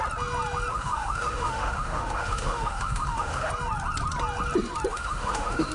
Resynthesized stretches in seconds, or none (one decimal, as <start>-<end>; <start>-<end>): 0.7-3.5; 4.9-5.7